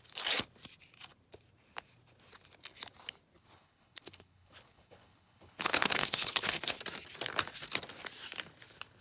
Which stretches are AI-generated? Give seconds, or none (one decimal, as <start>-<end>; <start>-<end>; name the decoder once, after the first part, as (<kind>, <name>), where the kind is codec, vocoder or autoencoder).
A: 3.4-6.8 (codec, HILCodec)